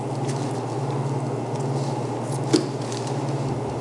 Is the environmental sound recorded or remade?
recorded